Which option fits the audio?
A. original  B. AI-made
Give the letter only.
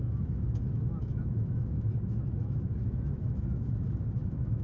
B